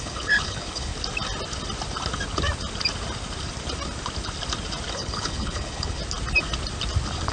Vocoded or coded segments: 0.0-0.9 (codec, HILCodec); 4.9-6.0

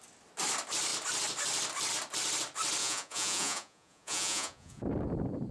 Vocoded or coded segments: 2.8-4.8 (vocoder, Vocos)

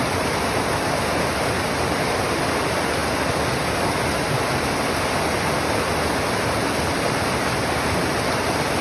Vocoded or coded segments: none